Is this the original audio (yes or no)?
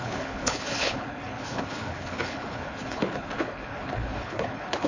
no